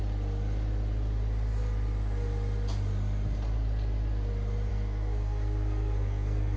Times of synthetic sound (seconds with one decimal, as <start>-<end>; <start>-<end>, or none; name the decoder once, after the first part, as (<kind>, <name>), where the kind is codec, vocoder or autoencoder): 4.7-6.6 (codec, SNAC)